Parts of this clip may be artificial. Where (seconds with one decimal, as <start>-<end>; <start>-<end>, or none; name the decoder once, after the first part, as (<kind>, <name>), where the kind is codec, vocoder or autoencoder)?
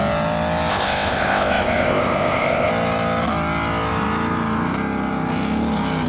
0.7-2.7 (codec, ZipCodec)